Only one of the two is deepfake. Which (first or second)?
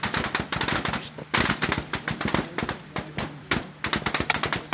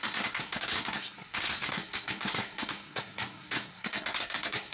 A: second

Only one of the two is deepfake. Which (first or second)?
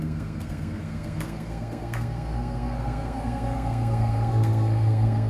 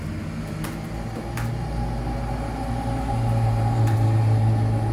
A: first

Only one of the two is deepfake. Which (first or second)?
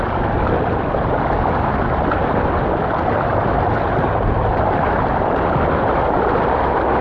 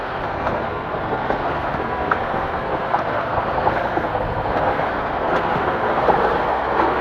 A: second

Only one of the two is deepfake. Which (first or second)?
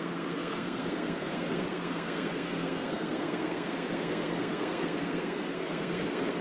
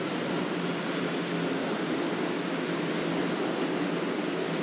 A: first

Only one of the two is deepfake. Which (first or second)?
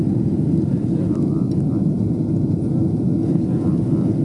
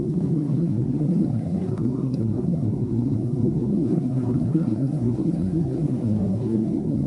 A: second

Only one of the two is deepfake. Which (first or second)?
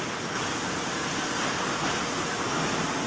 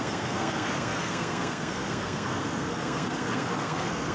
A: second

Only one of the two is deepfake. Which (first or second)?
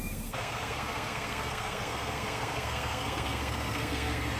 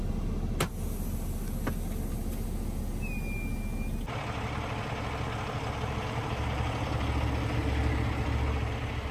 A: first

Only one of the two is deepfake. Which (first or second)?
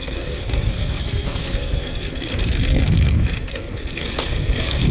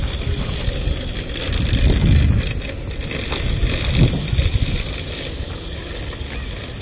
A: first